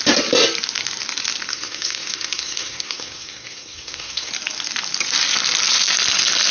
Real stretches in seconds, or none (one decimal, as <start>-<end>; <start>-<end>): 0.0-1.5; 4.3-6.5